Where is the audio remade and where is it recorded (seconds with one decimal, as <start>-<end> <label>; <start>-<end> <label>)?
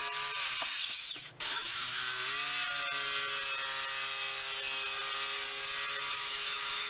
0.0-0.8 recorded; 0.8-2.0 remade; 2.0-6.1 recorded; 6.1-6.9 remade